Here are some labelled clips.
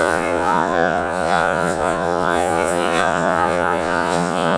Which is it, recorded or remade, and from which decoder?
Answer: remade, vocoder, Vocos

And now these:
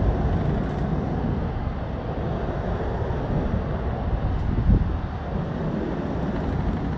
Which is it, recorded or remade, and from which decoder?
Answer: recorded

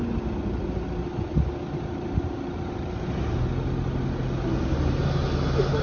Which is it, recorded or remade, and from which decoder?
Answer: recorded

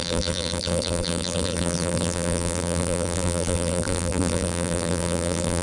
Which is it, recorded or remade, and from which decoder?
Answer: remade, vocoder, BigVGAN v2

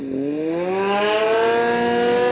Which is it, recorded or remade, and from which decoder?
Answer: recorded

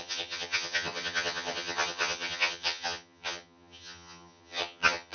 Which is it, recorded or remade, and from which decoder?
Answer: remade, vocoder, HiFi-GAN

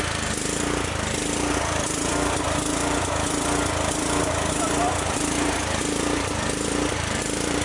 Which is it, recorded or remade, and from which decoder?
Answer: remade, vocoder, BigVGAN v2